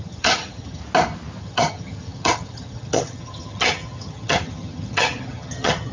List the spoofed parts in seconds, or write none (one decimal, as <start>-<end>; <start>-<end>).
0.0-0.8; 1.4-5.9

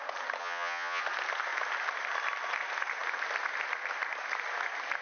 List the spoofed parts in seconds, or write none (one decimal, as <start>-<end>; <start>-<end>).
0.4-1.0

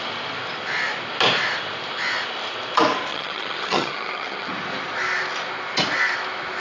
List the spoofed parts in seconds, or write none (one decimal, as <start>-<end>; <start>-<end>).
3.1-4.5

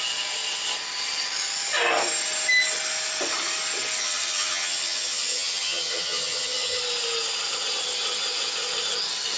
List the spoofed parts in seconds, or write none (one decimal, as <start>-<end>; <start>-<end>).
4.0-6.8

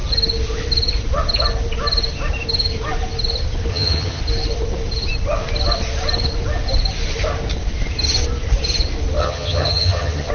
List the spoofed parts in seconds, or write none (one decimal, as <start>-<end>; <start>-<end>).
3.7-4.2; 9.2-10.3